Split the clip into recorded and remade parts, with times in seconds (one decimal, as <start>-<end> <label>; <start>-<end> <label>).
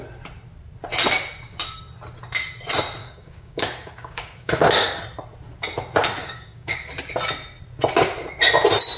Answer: 0.0-3.0 recorded; 3.0-5.0 remade; 5.0-6.2 recorded; 6.2-6.9 remade; 6.9-9.0 recorded